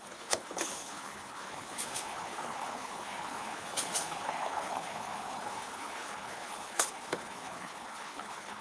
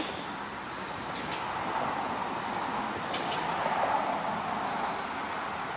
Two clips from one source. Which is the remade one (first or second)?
first